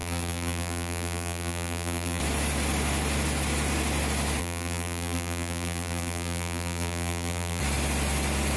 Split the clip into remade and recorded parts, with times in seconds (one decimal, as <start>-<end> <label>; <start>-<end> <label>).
0.0-2.2 remade; 2.2-4.4 recorded; 4.4-7.6 remade; 7.6-8.6 recorded